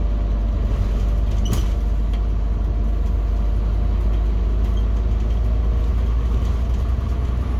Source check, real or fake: real